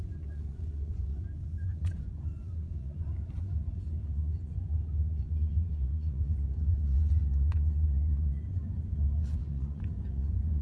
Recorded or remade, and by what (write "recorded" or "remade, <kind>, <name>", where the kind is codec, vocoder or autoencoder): remade, vocoder, Vocos